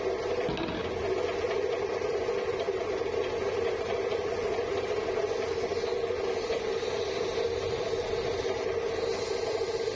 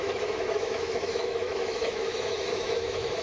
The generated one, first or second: second